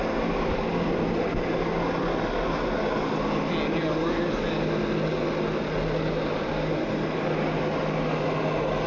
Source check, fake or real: real